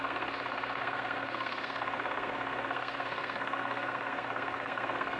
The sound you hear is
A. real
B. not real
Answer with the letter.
B